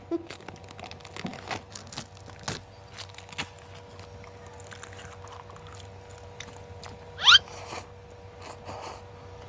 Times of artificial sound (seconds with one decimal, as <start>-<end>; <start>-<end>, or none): none